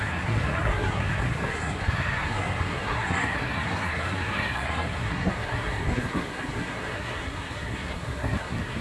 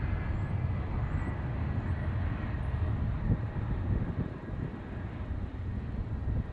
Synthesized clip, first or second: first